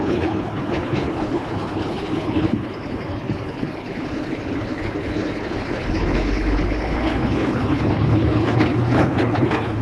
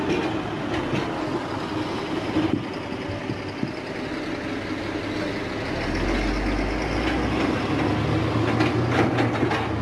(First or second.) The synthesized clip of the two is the first